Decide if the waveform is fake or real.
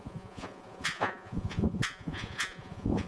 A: fake